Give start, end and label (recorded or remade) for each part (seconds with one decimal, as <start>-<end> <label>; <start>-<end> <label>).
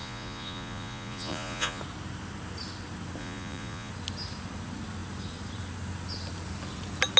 0.0-1.8 remade; 1.8-3.2 recorded; 3.2-3.9 remade; 3.9-7.2 recorded